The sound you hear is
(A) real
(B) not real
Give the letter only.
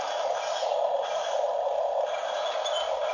A